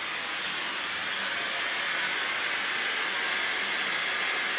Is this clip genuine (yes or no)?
yes